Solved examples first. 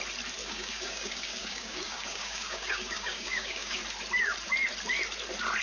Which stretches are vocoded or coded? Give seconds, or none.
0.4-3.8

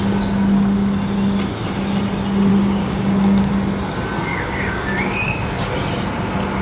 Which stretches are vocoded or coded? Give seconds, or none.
2.5-3.5; 4.3-5.7